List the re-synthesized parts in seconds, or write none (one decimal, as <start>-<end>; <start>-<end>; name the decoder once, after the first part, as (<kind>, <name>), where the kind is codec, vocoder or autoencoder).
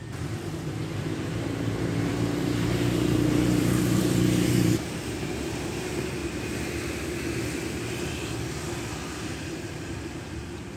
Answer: 0.0-6.2 (vocoder, BigVGAN v2); 9.3-10.8